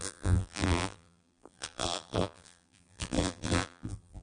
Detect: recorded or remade remade